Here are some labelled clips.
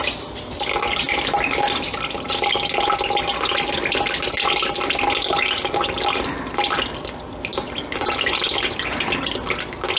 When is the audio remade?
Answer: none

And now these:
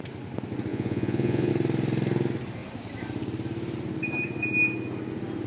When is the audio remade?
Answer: 0.7-1.5 (vocoder, Vocos)

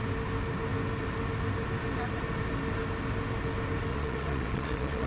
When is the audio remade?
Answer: 3.9-5.1 (vocoder, Vocos)

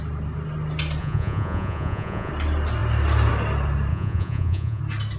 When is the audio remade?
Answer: 1.0-2.3 (vocoder, Vocos); 3.9-4.8

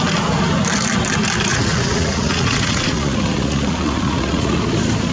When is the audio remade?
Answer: 1.5-4.6 (vocoder, Vocos)